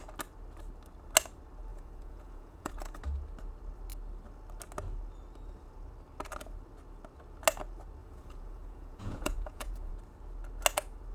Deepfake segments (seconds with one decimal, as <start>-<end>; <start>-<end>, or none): 1.7-3.0; 8.0-9.9